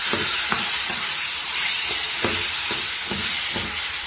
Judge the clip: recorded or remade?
recorded